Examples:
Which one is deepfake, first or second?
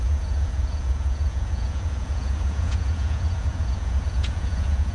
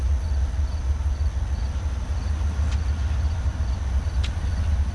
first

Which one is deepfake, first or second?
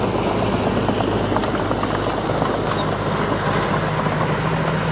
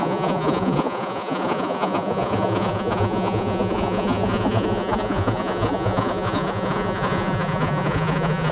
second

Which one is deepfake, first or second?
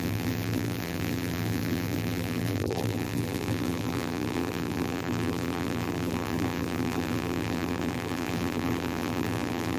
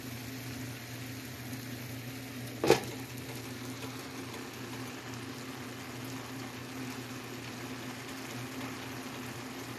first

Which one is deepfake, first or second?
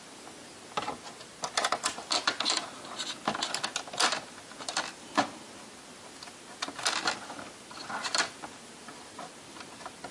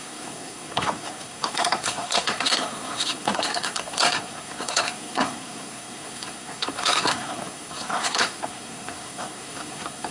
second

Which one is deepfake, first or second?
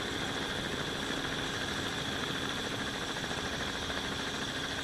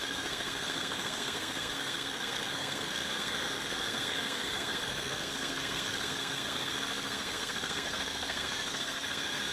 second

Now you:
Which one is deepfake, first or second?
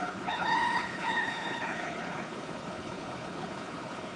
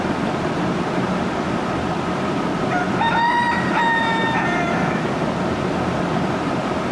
first